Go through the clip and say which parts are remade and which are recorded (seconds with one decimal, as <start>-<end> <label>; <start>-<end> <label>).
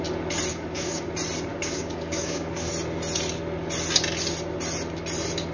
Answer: 0.0-0.5 recorded; 0.5-1.1 remade; 1.1-1.5 recorded; 1.5-2.7 remade; 2.7-5.5 recorded